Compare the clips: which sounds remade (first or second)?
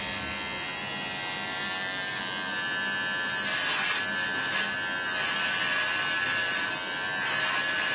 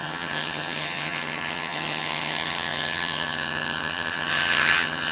second